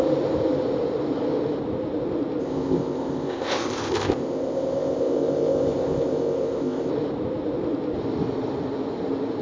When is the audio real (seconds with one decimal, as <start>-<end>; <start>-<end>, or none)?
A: 0.0-2.4; 6.9-9.4